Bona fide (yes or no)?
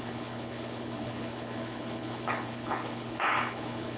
no